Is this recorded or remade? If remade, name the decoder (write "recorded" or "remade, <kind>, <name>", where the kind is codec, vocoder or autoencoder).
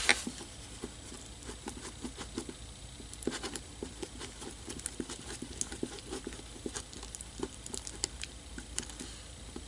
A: recorded